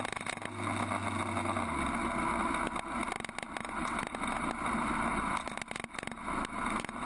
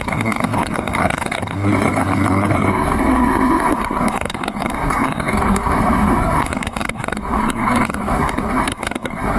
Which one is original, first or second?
first